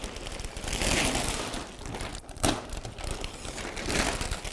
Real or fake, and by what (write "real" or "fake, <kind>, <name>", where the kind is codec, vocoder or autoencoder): real